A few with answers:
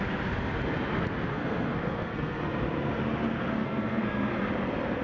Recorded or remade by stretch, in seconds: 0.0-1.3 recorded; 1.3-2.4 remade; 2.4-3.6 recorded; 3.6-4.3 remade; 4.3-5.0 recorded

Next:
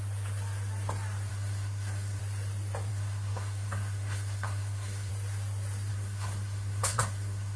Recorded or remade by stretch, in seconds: 0.0-1.3 recorded; 1.3-2.2 remade; 2.2-2.9 recorded; 2.9-5.1 remade; 5.1-5.9 recorded; 5.9-7.6 remade